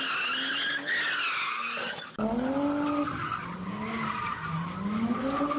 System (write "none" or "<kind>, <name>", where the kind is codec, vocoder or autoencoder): none